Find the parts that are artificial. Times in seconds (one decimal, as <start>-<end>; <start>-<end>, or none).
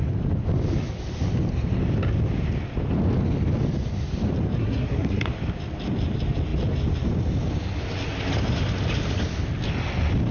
4.6-5.3